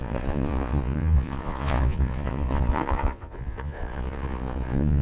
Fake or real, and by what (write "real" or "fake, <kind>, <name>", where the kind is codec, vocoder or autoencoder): fake, vocoder, Vocos